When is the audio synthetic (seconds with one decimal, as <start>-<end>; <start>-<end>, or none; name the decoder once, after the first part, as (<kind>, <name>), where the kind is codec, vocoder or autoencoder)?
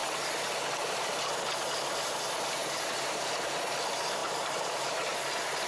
2.6-3.3 (vocoder, BigVGAN v2); 4.2-5.0